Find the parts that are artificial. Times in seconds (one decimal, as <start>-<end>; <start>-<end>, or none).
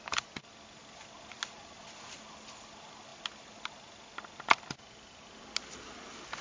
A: none